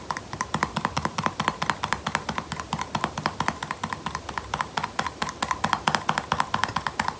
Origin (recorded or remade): recorded